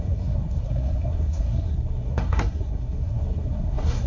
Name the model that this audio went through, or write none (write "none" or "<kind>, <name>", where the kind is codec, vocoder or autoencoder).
codec, SNAC